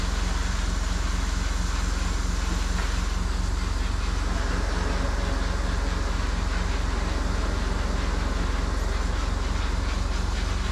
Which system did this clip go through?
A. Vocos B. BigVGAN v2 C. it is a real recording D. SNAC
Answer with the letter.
C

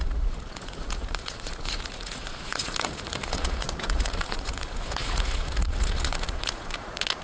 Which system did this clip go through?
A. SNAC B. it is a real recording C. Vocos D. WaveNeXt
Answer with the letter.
C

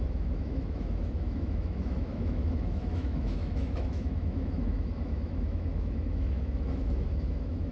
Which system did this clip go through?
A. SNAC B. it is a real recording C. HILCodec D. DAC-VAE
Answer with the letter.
D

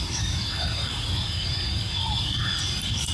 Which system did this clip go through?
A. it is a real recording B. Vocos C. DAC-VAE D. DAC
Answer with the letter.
D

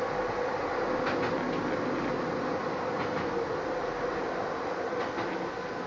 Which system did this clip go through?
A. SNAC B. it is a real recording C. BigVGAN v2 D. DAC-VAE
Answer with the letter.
B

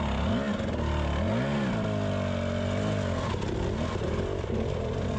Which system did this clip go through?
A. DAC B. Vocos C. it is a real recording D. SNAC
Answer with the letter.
C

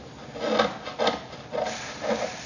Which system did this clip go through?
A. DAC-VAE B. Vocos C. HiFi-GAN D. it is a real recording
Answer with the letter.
D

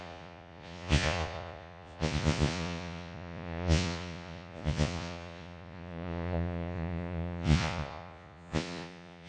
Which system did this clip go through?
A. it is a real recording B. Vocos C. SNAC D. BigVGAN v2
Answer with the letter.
B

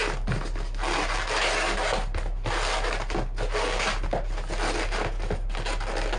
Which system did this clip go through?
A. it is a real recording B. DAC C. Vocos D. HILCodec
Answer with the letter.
A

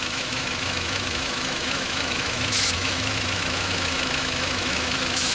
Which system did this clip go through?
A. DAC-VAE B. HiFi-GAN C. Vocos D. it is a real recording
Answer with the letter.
A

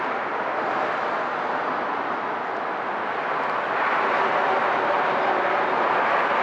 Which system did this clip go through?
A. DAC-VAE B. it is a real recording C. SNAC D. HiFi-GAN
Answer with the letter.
B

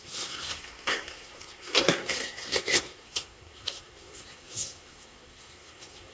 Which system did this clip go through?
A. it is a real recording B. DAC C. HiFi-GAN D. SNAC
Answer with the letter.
D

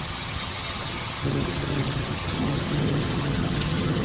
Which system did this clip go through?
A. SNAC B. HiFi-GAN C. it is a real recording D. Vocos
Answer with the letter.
B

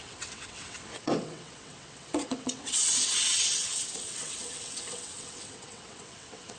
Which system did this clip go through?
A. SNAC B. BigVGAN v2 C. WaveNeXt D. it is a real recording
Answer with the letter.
C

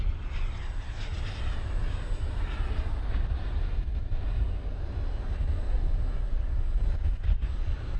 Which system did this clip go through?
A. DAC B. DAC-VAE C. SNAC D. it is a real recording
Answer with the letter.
D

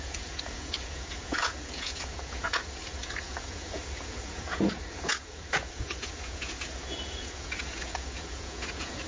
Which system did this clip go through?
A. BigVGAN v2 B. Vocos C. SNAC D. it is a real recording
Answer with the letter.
B